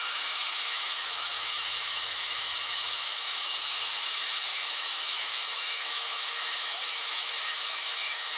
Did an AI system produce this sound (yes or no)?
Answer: yes